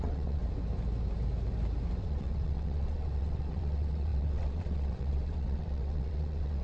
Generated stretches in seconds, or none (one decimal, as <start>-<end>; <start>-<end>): 0.0-0.4; 2.0-6.6